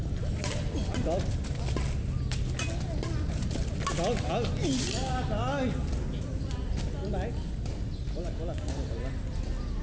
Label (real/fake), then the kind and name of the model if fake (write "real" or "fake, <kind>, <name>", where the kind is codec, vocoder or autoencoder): real